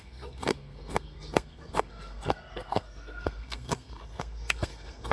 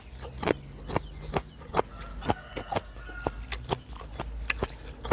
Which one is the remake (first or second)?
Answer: first